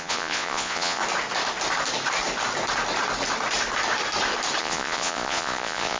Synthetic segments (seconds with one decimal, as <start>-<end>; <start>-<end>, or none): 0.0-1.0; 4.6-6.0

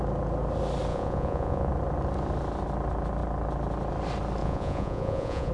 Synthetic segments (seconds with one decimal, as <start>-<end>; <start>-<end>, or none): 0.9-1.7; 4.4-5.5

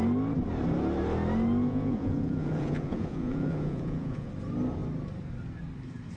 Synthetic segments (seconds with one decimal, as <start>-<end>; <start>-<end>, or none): 1.6-4.3

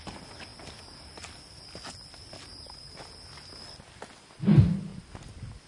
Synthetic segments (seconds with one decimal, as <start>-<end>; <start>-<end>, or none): none

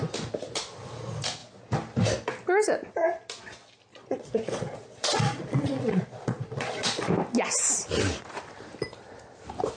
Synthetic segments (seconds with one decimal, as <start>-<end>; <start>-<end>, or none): 3.9-7.1

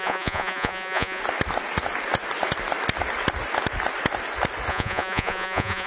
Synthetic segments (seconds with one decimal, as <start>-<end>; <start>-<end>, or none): 0.0-1.2; 4.7-5.9

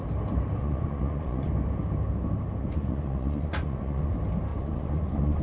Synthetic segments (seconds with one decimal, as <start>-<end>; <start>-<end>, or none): 0.6-1.5; 2.6-4.1; 4.5-5.4

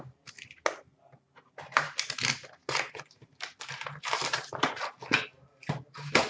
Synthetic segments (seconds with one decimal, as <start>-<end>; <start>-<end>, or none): none